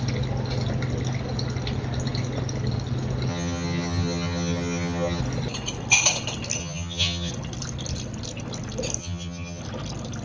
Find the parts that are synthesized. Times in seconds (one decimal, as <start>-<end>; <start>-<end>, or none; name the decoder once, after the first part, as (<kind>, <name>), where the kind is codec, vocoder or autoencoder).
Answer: 3.3-5.2 (vocoder, HiFi-GAN); 6.6-7.3; 9.0-9.6